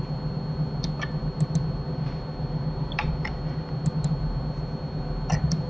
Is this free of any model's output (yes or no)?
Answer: yes